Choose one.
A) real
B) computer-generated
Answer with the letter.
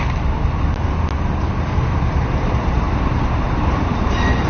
A